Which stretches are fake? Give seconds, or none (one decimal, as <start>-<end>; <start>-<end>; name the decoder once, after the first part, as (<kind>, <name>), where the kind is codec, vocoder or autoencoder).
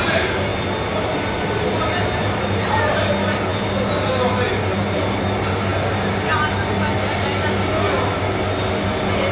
none